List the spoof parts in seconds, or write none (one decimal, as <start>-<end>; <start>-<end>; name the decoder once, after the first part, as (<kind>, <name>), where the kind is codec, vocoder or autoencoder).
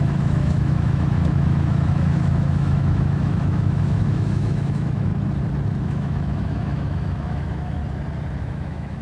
0.0-5.1 (autoencoder, DAC-VAE); 5.8-7.8; 8.4-9.0